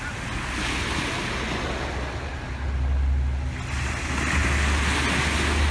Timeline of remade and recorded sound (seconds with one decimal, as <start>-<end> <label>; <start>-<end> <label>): 0.0-5.7 recorded